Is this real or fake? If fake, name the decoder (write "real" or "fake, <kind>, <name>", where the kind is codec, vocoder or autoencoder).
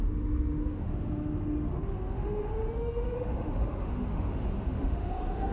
fake, autoencoder, DAC-VAE